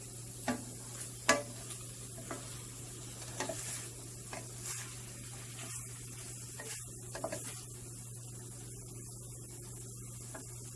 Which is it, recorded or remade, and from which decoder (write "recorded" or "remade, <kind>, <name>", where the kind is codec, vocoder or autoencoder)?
recorded